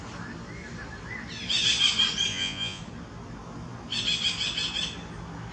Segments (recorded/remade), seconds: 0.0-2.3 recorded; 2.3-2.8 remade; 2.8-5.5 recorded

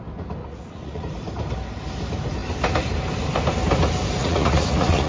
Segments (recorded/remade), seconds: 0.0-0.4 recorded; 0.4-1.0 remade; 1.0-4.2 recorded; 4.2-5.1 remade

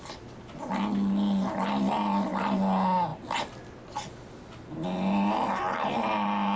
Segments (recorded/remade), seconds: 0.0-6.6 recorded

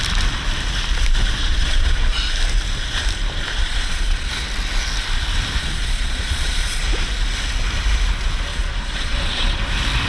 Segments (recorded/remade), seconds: 0.0-1.4 recorded; 1.4-2.2 remade; 2.2-3.6 recorded; 3.6-4.3 remade; 4.3-5.6 recorded; 5.6-6.8 remade; 6.8-8.5 recorded; 8.5-9.6 remade; 9.6-10.1 recorded

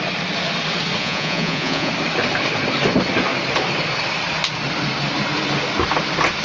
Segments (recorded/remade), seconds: 0.0-1.0 recorded; 1.0-1.9 remade; 1.9-6.4 recorded

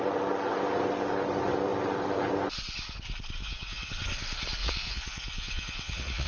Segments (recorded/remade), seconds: 0.0-3.4 recorded; 3.4-3.9 remade; 3.9-4.6 recorded; 4.6-6.3 remade

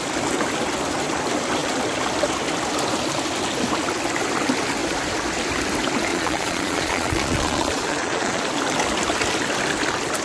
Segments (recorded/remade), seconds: 0.0-6.1 recorded; 6.1-8.4 remade; 8.4-10.2 recorded

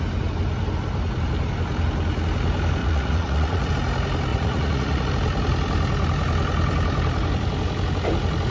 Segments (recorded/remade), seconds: 0.0-2.8 recorded; 2.8-3.7 remade; 3.7-4.3 recorded; 4.3-5.1 remade; 5.1-8.5 recorded